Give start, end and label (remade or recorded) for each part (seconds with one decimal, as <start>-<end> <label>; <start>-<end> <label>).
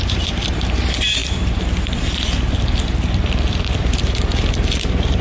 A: 0.0-5.2 remade